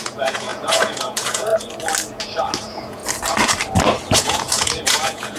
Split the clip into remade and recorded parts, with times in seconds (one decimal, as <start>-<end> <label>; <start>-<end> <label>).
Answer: 0.0-1.5 remade; 1.5-2.6 recorded; 2.6-3.0 remade; 3.0-4.2 recorded; 4.2-5.4 remade